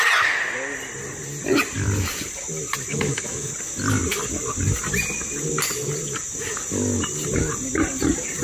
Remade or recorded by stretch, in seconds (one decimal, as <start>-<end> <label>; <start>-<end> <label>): 0.0-2.9 recorded; 2.9-3.5 remade; 3.5-8.4 recorded